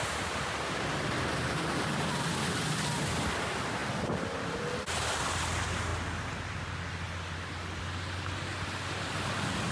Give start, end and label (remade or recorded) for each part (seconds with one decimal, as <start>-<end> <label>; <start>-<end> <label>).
0.0-9.7 recorded